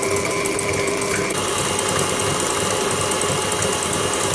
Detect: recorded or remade recorded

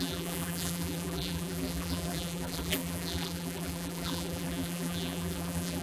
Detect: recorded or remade remade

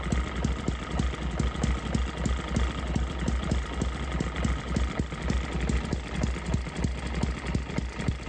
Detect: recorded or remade recorded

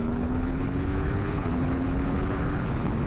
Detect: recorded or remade remade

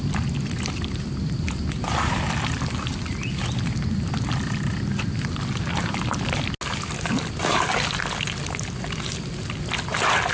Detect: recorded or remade recorded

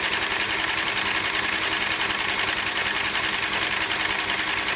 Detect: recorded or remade recorded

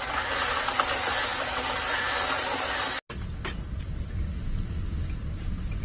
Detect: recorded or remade recorded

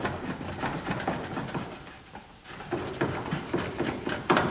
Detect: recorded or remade recorded